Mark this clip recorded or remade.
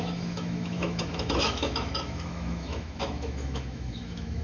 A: remade